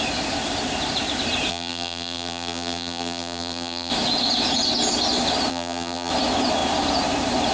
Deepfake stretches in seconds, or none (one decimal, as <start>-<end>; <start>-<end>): 1.5-3.9; 5.5-6.1